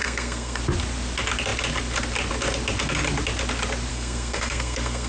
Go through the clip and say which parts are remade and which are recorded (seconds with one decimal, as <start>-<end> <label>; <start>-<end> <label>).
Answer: 0.0-0.6 remade; 0.6-3.9 recorded; 3.9-5.1 remade